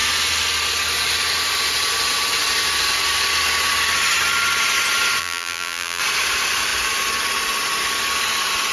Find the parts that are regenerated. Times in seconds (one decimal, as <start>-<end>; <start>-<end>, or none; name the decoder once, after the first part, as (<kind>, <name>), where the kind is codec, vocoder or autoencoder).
5.2-6.0 (vocoder, BigVGAN v2)